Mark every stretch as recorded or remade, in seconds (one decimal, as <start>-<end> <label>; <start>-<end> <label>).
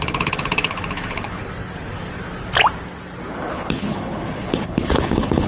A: 0.0-1.4 remade; 1.4-3.3 recorded; 3.3-5.5 remade